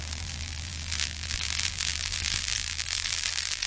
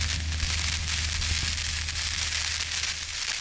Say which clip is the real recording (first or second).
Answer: second